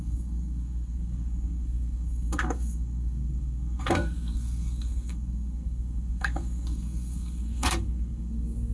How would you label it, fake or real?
fake